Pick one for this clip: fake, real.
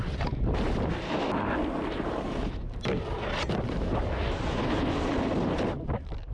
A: real